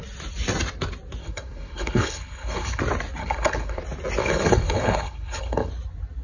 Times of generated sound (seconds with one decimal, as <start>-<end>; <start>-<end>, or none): 1.2-2.8; 3.2-3.8; 4.2-5.7